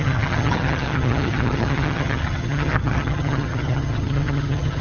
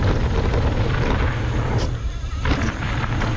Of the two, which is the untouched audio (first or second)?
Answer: second